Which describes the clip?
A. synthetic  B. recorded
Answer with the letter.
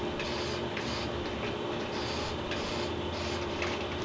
A